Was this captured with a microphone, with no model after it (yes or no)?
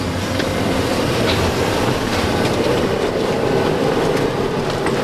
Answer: yes